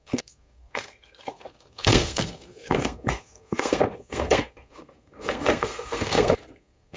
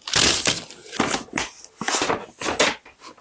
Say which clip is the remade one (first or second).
first